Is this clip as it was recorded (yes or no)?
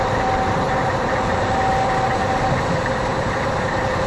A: yes